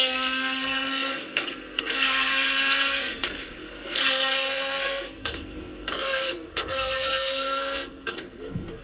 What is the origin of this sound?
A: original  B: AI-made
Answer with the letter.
B